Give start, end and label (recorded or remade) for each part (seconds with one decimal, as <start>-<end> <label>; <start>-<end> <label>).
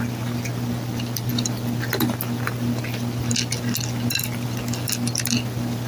0.0-5.9 recorded